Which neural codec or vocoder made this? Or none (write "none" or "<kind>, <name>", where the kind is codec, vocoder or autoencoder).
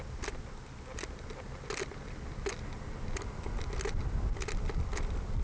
none